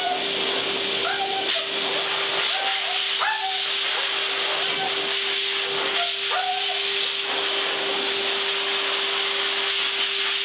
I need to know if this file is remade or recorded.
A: recorded